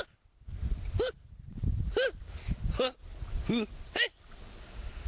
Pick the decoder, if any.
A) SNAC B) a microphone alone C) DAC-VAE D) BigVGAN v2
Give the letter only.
B